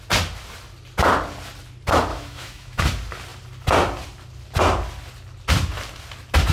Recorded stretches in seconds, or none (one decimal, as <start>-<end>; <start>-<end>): 0.0-2.1; 2.8-6.5